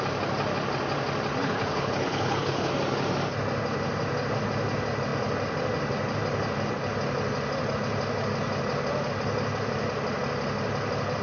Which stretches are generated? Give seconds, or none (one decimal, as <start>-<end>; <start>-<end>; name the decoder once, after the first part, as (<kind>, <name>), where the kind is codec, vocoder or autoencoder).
1.4-2.7 (codec, HILCodec)